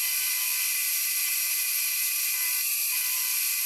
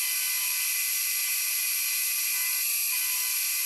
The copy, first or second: first